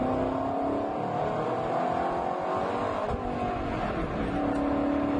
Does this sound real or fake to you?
real